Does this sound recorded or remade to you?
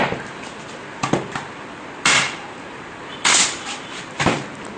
recorded